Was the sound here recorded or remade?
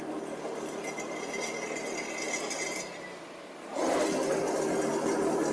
recorded